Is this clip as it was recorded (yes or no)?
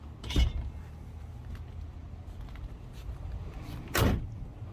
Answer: yes